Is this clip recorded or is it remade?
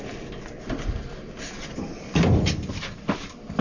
recorded